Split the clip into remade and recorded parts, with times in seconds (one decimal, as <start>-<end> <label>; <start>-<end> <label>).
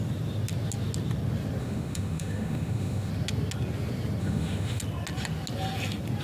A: 0.0-1.6 recorded; 1.6-3.1 remade; 3.1-4.2 recorded; 4.2-4.8 remade; 4.8-6.2 recorded